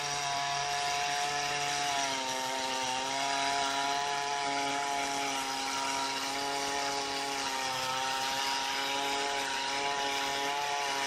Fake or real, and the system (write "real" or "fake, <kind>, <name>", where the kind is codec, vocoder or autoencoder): real